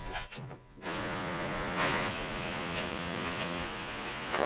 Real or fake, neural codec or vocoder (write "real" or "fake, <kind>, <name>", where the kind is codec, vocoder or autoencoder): fake, vocoder, Vocos